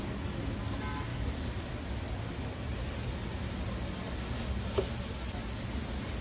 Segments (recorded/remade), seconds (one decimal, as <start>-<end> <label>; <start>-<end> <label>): 0.0-6.2 recorded